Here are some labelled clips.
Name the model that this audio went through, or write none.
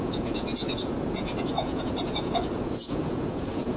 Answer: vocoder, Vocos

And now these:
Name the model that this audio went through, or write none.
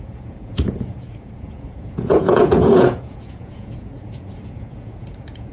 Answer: vocoder, Vocos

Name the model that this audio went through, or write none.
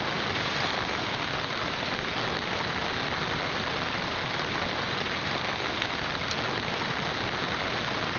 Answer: none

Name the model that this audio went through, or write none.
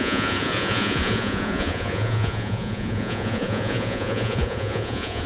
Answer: vocoder, Vocos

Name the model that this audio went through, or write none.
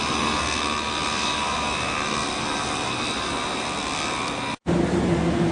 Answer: none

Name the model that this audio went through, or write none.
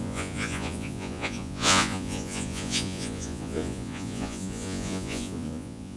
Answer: vocoder, Vocos